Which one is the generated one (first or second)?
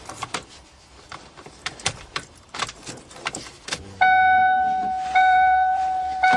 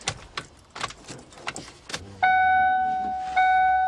first